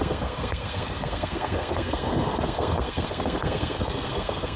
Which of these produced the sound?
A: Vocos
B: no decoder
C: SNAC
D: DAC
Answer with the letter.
C